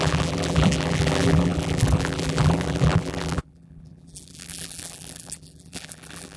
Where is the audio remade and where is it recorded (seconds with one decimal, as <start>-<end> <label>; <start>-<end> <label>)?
0.0-6.4 remade